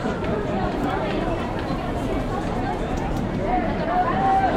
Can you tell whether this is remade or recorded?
remade